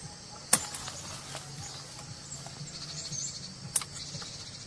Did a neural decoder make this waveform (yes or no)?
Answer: no